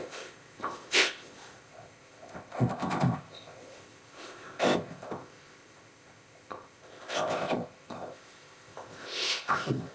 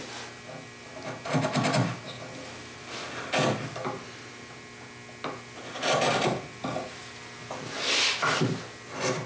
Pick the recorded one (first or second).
second